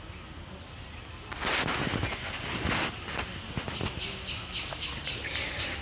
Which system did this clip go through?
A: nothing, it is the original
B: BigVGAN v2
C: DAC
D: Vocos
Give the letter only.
A